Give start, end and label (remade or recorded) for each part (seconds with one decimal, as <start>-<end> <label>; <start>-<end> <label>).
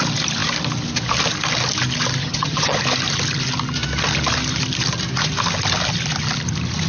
0.0-2.2 recorded; 2.2-2.8 remade; 2.8-6.9 recorded